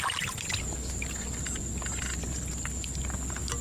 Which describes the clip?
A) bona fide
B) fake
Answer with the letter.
A